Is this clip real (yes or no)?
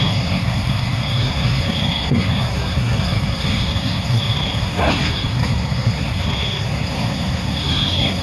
no